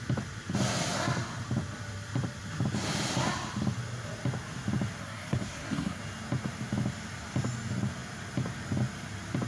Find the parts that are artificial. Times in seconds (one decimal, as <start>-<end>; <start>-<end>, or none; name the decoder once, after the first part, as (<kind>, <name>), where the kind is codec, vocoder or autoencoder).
5.0-6.0 (codec, SNAC)